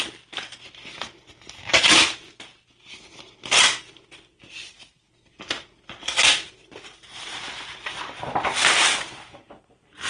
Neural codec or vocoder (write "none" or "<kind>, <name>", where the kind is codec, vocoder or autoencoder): none